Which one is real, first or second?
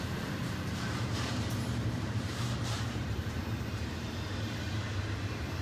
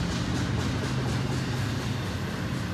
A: second